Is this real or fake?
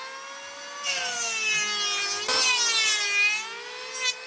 real